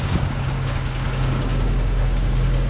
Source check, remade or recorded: remade